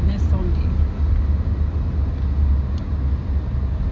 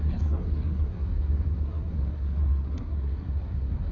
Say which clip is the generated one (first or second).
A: second